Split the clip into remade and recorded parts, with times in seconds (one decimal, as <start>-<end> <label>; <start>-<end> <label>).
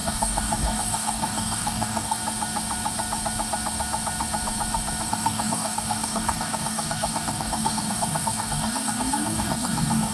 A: 0.0-2.2 remade; 2.2-5.1 recorded; 5.1-10.1 remade